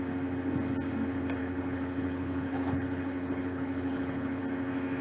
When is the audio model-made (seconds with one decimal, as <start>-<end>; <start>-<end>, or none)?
1.4-4.4